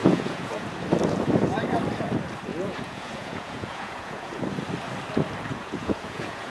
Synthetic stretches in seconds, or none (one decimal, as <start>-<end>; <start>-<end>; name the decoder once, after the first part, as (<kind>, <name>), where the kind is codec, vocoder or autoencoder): 0.0-0.7 (vocoder, Vocos); 2.5-4.4; 5.5-6.5